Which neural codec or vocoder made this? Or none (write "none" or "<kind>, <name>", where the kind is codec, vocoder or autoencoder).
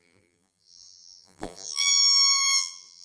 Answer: vocoder, BigVGAN v2